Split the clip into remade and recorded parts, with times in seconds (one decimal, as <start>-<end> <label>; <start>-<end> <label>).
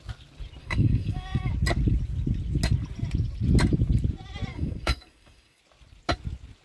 0.0-0.6 recorded; 0.6-1.5 remade; 1.5-4.5 recorded; 4.5-5.6 remade; 5.6-6.6 recorded